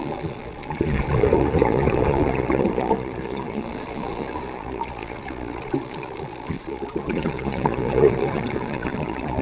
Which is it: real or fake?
fake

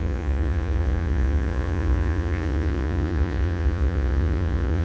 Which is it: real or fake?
fake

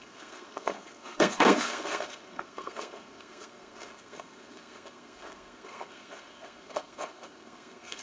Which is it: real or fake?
fake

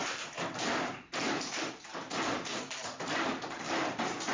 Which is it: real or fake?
real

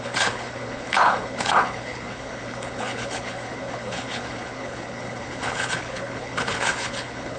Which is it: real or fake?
fake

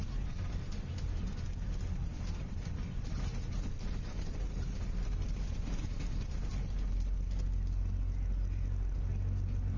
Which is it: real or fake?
real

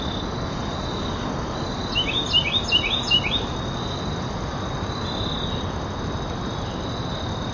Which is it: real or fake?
real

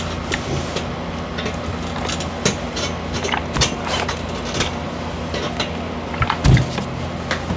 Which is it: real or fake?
real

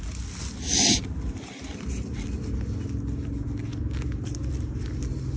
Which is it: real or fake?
real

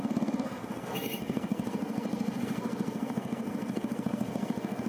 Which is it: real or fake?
fake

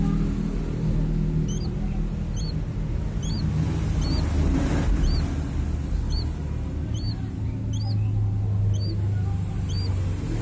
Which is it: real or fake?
real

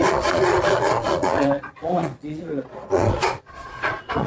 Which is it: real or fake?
fake